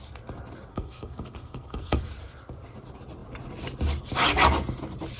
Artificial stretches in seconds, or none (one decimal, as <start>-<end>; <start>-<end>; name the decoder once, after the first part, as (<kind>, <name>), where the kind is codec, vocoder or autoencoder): 0.7-2.0 (codec, SNAC)